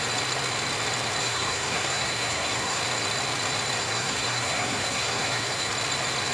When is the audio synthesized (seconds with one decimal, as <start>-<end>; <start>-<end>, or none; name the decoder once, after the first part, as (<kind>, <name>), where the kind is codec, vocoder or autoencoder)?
1.2-2.8 (codec, SNAC); 3.8-5.7